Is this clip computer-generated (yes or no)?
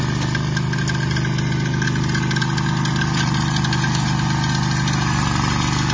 no